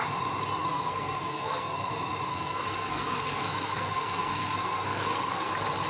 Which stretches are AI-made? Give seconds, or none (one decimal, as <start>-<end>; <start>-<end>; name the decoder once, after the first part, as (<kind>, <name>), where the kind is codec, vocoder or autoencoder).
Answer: 0.6-1.9 (codec, SNAC); 2.3-5.5